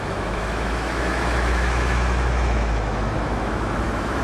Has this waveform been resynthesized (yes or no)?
yes